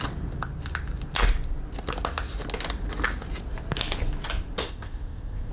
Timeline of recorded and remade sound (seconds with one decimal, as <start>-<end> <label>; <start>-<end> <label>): 0.0-4.6 recorded; 4.6-5.5 remade

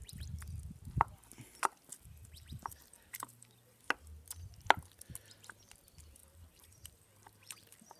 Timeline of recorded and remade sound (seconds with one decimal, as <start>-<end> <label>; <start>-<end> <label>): 0.0-1.9 recorded; 1.9-3.8 remade; 3.8-6.2 recorded; 6.2-8.0 remade

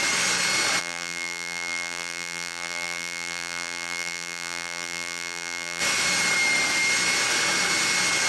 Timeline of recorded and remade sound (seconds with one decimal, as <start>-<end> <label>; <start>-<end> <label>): 0.0-0.8 recorded; 0.8-5.8 remade; 5.8-8.3 recorded

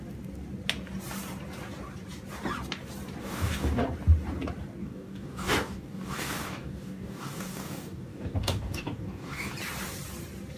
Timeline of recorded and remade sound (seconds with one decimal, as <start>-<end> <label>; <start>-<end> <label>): 0.0-3.2 recorded; 3.2-3.8 remade; 3.8-4.8 recorded; 4.8-9.5 remade; 9.5-10.6 recorded

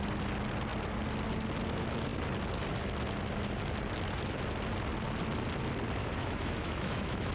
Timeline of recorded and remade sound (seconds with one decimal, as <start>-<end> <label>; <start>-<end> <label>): 0.0-6.0 recorded; 6.0-7.3 remade

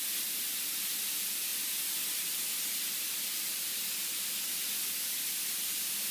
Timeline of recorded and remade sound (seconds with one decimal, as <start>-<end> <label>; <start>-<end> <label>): 0.0-6.1 recorded

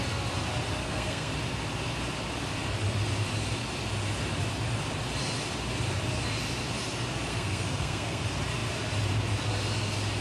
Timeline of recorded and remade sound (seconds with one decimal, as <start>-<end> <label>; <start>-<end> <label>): 0.0-0.8 recorded; 0.8-1.3 remade; 1.3-7.3 recorded; 7.3-8.2 remade; 8.2-10.2 recorded